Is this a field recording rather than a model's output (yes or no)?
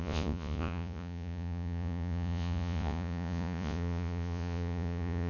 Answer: no